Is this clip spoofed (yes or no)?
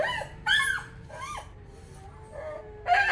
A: no